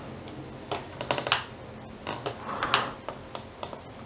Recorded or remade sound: recorded